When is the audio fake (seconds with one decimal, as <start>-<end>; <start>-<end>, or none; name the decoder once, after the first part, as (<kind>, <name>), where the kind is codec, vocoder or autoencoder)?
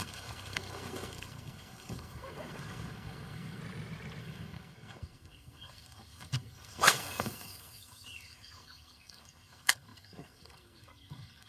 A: 0.0-3.6 (codec, SNAC); 4.2-11.5